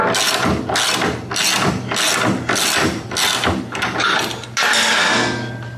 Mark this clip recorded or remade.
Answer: recorded